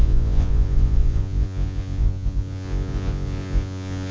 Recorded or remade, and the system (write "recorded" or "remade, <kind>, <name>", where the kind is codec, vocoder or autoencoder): remade, vocoder, Vocos